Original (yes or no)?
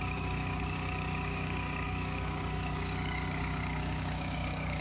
no